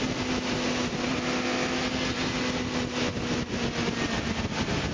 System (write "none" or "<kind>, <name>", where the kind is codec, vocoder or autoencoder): none